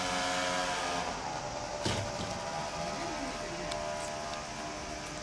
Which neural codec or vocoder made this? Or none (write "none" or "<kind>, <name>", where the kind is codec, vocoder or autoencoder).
none